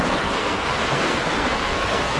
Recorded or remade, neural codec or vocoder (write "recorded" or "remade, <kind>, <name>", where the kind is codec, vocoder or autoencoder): remade, codec, SNAC